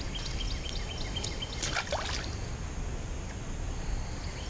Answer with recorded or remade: recorded